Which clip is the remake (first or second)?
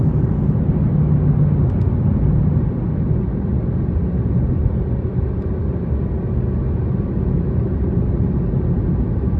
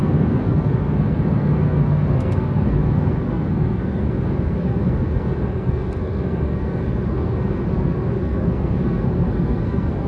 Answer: second